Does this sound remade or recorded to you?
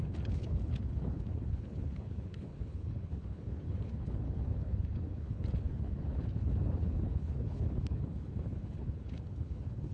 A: remade